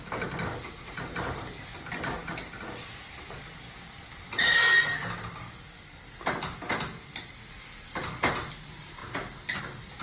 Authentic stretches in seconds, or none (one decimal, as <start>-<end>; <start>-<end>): 0.0-10.0